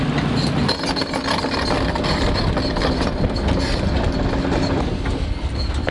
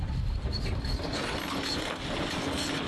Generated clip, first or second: second